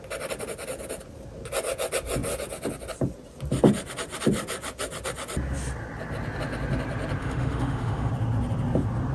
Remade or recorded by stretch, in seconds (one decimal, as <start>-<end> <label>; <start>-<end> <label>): 0.0-7.2 recorded; 7.2-8.1 remade; 8.1-9.1 recorded